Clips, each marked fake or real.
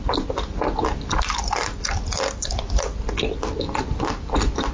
real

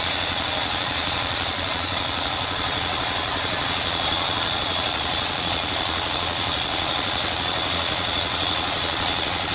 fake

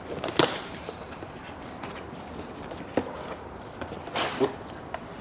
real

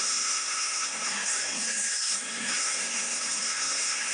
fake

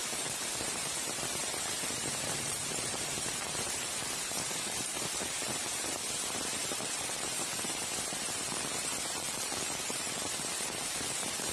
fake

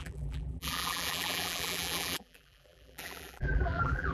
fake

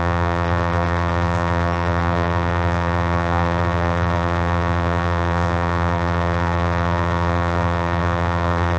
fake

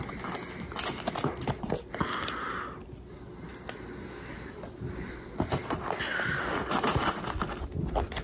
real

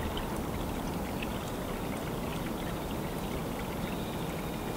real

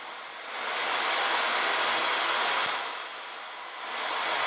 real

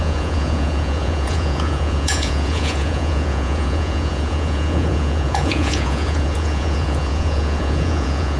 fake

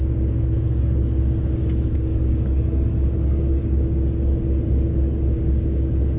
fake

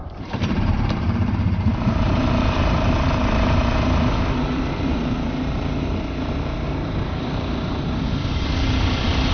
fake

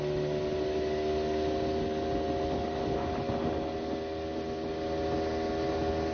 real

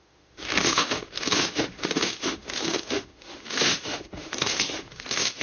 fake